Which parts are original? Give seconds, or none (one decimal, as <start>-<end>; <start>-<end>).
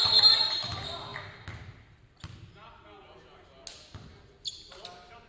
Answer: 0.0-5.3